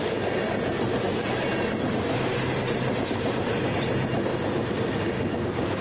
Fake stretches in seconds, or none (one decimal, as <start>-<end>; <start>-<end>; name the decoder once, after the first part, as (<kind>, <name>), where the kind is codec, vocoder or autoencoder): none